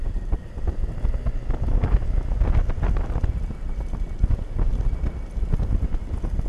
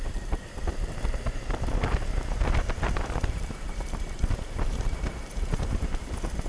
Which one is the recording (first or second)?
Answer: first